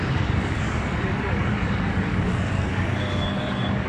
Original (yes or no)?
no